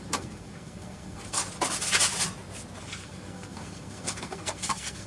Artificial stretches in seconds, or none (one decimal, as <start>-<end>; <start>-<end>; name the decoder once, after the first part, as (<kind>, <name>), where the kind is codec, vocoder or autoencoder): 0.0-1.4 (codec, SNAC); 2.8-5.1